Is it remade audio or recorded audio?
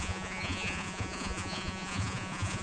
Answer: remade